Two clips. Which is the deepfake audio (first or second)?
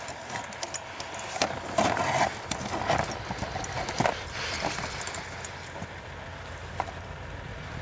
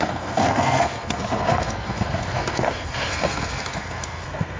second